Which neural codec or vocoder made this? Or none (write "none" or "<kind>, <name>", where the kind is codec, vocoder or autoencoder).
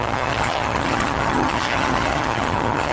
vocoder, HiFi-GAN